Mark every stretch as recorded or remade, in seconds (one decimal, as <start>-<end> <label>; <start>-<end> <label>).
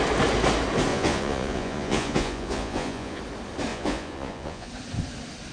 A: 0.0-0.9 recorded; 0.9-3.2 remade; 3.2-3.7 recorded; 3.7-4.7 remade; 4.7-5.5 recorded